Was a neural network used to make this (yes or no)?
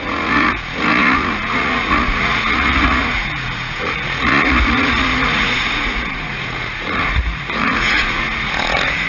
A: yes